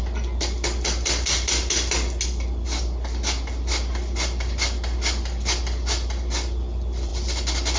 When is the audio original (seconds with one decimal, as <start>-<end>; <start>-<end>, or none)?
0.0-7.8